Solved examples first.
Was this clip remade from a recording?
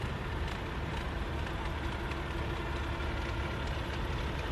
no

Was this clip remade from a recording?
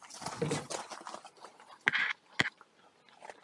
no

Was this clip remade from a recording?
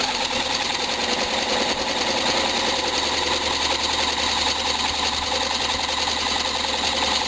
no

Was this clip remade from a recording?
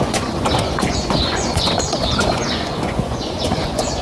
yes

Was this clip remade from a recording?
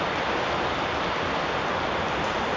no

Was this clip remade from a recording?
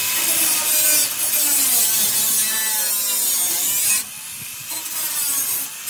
no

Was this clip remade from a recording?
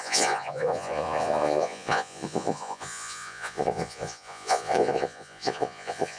yes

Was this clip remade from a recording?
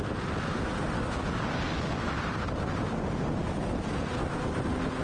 no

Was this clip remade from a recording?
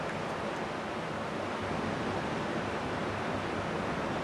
no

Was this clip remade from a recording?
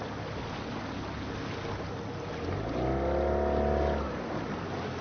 no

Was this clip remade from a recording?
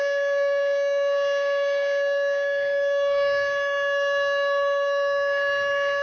yes